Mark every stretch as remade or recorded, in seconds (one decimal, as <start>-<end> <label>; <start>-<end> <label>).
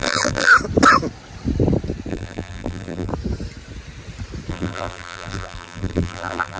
0.0-0.5 remade; 0.5-2.1 recorded; 2.1-3.1 remade; 3.1-4.5 recorded; 4.5-6.6 remade